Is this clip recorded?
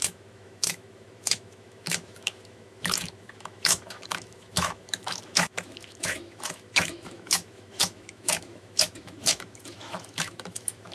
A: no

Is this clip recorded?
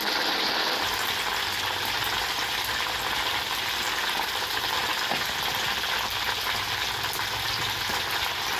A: yes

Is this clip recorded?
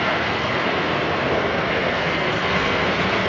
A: no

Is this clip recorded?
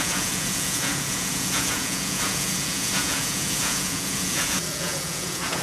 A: no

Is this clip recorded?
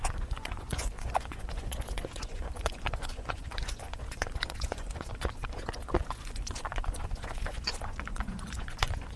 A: no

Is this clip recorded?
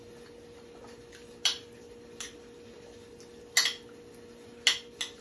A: yes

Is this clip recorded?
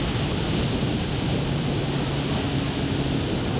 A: yes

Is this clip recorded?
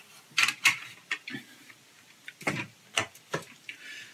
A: yes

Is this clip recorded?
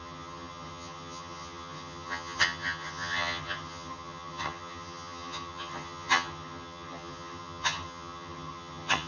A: no